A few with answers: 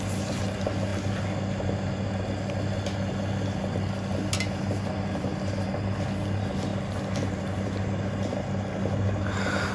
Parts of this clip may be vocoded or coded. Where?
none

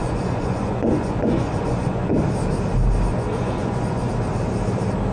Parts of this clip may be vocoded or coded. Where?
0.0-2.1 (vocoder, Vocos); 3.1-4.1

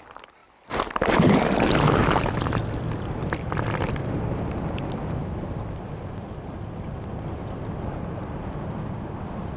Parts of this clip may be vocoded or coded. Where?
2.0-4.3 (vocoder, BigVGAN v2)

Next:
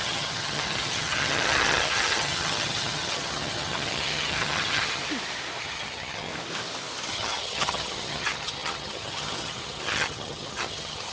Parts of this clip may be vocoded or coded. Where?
0.0-5.0 (vocoder, HiFi-GAN); 5.6-6.3; 7.1-11.1